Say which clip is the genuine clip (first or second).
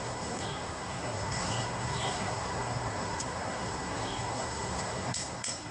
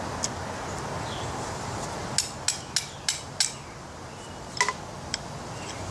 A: second